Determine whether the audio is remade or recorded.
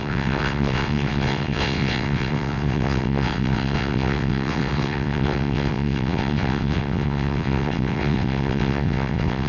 remade